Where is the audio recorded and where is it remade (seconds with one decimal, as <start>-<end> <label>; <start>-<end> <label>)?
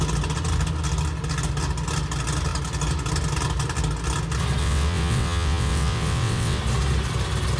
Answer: 0.0-4.6 recorded; 4.6-6.6 remade; 6.6-7.6 recorded